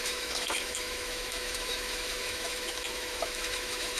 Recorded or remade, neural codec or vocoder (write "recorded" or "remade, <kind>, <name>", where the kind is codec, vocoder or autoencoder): remade, autoencoder, DAC-VAE